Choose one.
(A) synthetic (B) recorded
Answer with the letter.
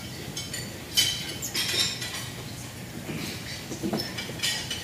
B